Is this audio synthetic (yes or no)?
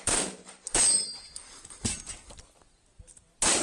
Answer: no